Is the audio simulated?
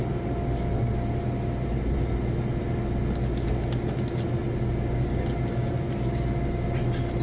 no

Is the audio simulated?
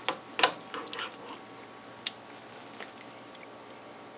no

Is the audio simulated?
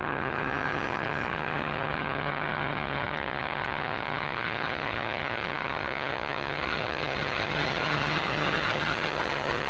yes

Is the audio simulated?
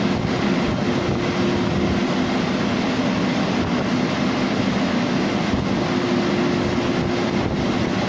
no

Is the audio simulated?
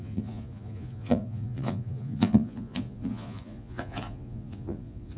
yes